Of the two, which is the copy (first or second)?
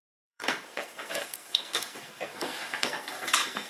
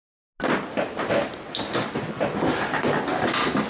first